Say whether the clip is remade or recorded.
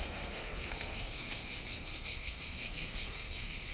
remade